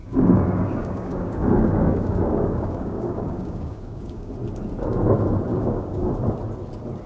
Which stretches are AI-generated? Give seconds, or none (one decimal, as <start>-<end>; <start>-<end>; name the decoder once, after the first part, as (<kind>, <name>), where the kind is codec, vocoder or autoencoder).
0.0-4.3 (codec, DAC); 5.5-6.1